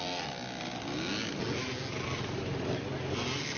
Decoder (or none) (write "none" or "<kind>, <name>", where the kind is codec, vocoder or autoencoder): none